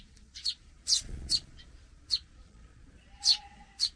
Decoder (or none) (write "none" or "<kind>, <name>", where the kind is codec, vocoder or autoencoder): vocoder, Vocos